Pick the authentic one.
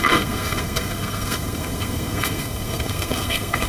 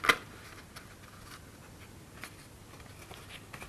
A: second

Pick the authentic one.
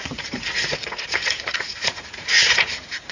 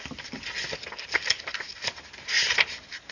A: second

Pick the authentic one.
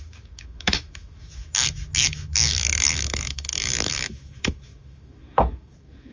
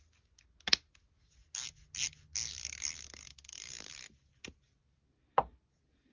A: second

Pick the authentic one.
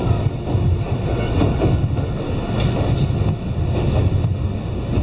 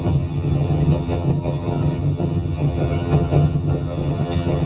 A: first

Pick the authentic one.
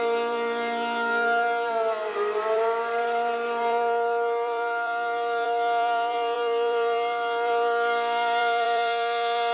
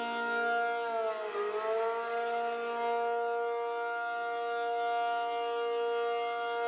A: second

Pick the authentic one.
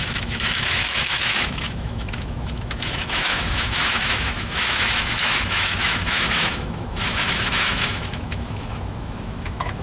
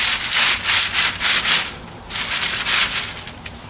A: second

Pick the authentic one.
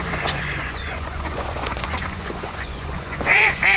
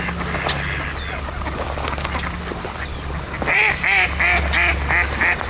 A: second